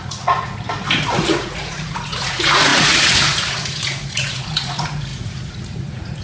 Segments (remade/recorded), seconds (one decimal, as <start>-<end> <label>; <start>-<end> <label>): 0.0-0.5 remade; 0.5-1.2 recorded; 1.2-6.2 remade